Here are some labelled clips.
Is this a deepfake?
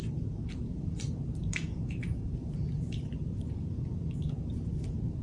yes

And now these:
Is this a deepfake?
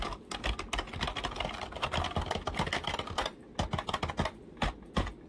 no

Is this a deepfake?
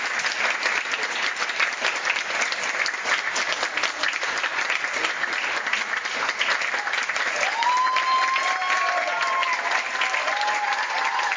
no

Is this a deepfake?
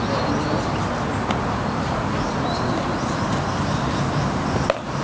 no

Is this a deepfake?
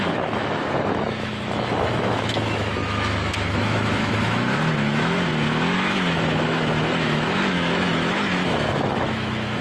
yes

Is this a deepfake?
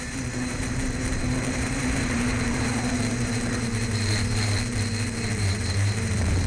yes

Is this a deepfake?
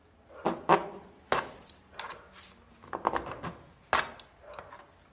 no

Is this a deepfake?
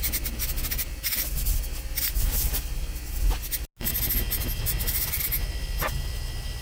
no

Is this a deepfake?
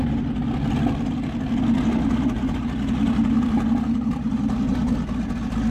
no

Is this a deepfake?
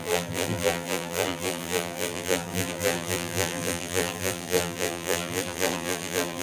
yes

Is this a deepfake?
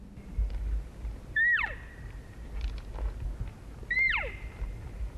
no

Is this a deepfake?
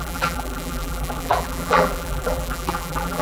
yes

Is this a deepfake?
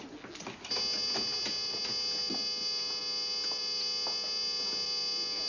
no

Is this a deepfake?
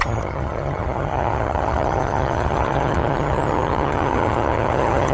yes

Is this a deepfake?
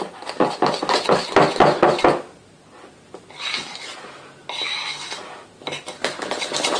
no